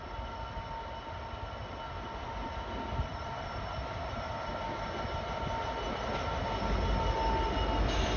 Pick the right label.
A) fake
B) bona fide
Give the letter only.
B